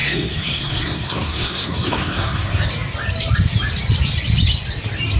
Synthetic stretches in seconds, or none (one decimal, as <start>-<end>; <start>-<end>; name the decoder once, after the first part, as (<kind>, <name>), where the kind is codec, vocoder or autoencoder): 0.0-2.6 (codec, SNAC)